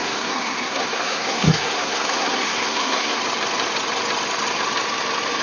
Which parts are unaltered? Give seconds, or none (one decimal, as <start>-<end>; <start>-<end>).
3.2-5.4